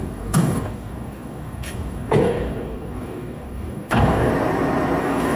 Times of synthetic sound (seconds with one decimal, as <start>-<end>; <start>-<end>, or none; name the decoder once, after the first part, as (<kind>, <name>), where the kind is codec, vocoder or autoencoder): 0.0-4.3 (codec, DAC); 5.0-5.4